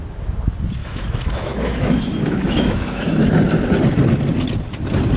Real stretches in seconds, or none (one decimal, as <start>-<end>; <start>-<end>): 0.0-0.8; 3.3-5.2

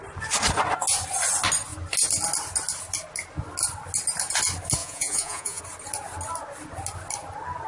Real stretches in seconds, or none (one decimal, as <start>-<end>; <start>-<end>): 0.0-4.8; 5.6-7.7